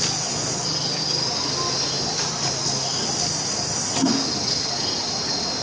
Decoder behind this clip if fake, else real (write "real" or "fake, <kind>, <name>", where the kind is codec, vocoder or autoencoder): real